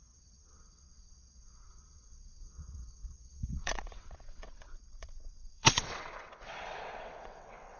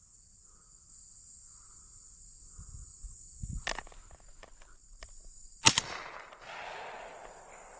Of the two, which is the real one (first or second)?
second